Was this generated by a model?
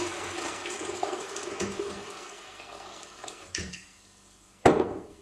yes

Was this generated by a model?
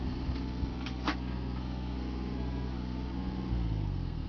yes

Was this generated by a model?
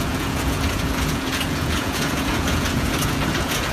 yes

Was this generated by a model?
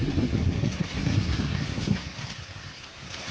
yes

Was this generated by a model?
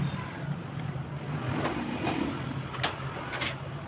no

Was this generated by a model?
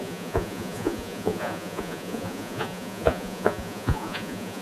yes